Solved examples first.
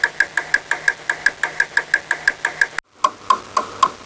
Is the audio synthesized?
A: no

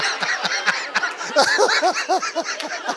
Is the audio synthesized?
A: no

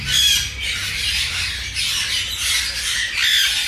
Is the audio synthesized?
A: no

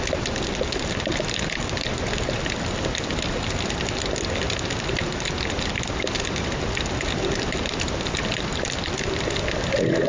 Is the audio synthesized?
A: no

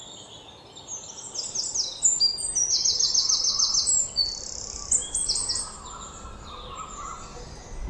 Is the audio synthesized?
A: no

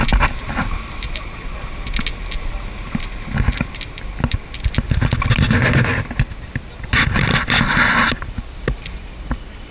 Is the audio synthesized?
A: no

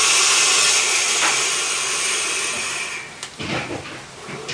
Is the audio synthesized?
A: no